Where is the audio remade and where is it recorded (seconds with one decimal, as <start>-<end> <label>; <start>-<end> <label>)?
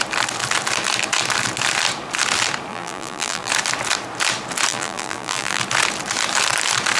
0.0-2.7 recorded; 2.7-3.5 remade; 3.5-4.7 recorded; 4.7-5.6 remade; 5.6-7.0 recorded